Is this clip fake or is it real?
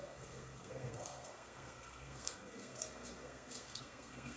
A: fake